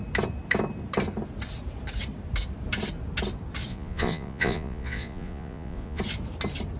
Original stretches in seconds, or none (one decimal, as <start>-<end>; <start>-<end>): 0.0-3.7; 6.0-6.8